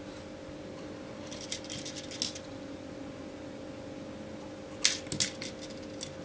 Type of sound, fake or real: real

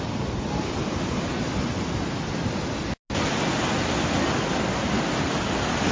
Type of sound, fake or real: real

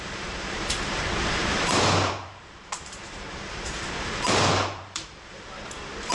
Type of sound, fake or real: fake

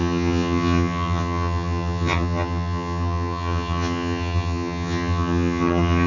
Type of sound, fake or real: fake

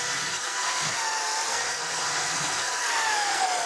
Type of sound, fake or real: fake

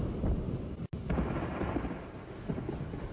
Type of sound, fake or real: real